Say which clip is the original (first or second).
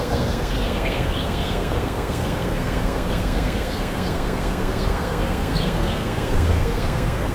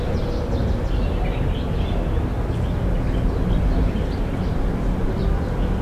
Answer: second